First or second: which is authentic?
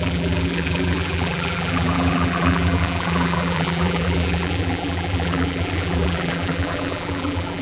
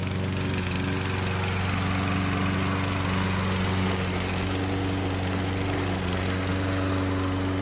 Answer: second